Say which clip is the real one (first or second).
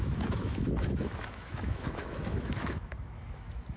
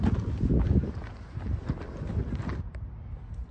second